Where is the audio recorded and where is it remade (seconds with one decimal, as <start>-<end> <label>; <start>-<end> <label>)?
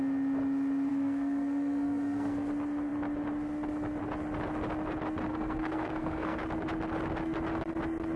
0.0-0.9 recorded; 0.9-2.5 remade; 2.5-5.3 recorded; 5.3-6.4 remade; 6.4-8.2 recorded